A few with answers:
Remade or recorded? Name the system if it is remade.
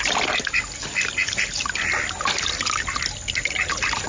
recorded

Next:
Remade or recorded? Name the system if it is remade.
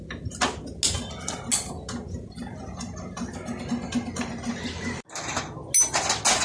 recorded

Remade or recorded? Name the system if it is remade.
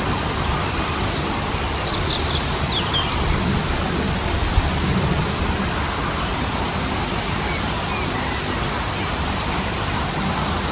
recorded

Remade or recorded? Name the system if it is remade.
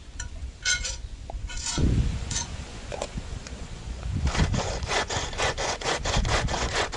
remade, vocoder, Vocos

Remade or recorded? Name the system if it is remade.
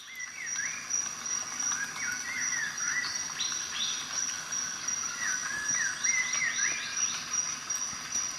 recorded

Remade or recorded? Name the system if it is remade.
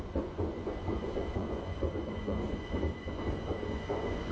remade, vocoder, Vocos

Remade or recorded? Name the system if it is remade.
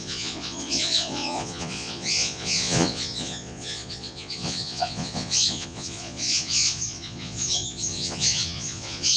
remade, vocoder, Vocos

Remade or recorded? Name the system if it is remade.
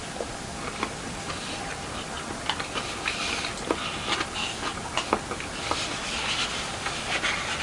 recorded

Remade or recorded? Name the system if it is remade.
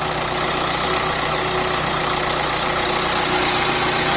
recorded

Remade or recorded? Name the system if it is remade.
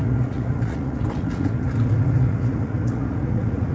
remade, vocoder, Vocos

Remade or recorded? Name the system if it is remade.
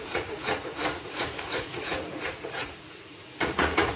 remade, vocoder, Vocos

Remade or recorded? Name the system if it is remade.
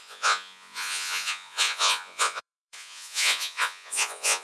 remade, vocoder, Vocos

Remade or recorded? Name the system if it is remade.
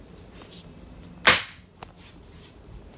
recorded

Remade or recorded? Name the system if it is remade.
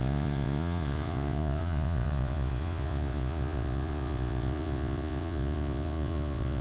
remade, vocoder, Vocos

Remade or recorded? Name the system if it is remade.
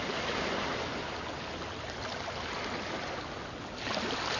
recorded